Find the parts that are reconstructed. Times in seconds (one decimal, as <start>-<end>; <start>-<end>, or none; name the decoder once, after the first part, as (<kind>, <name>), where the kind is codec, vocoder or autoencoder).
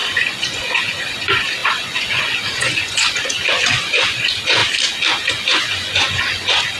0.0-4.6 (vocoder, Vocos); 5.3-6.8